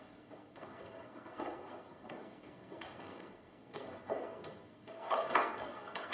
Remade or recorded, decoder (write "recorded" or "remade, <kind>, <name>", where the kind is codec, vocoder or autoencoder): remade, codec, SNAC